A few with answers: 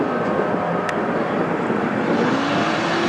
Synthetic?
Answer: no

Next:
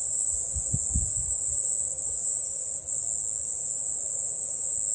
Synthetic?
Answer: no